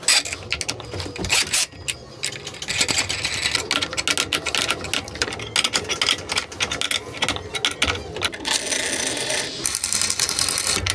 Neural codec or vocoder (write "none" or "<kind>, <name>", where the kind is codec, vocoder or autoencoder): none